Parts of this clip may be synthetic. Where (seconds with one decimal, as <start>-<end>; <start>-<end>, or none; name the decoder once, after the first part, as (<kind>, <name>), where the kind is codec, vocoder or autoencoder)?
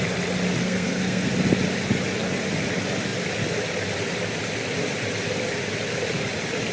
0.6-1.3 (codec, SNAC)